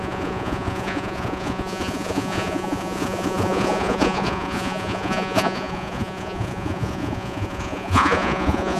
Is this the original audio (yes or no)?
no